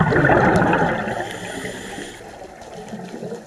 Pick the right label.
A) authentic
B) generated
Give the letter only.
A